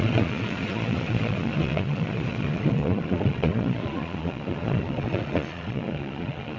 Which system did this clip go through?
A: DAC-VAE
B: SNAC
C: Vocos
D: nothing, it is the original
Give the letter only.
C